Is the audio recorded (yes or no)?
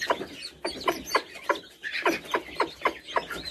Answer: yes